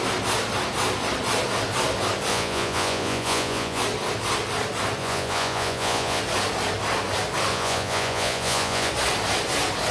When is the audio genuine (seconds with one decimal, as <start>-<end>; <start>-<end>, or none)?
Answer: 0.0-2.3; 3.8-5.0; 6.2-7.5; 8.9-9.9